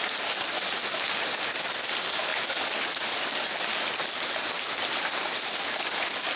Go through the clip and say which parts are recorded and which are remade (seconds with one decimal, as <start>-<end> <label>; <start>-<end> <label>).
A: 0.0-6.4 recorded